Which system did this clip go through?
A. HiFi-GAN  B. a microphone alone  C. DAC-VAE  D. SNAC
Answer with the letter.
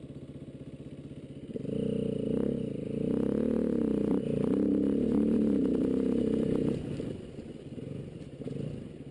B